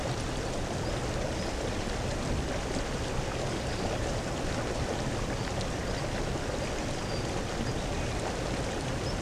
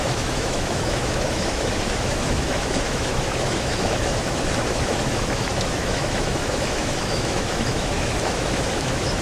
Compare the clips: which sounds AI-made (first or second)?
second